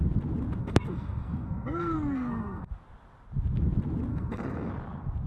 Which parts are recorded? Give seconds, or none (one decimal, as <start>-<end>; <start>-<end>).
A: 0.0-0.6; 2.7-4.1; 4.7-5.3